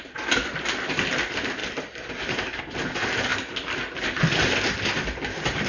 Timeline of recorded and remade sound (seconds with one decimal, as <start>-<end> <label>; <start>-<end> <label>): 0.0-5.7 recorded